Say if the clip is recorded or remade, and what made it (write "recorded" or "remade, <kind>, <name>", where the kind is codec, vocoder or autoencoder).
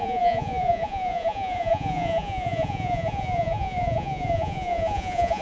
remade, vocoder, Vocos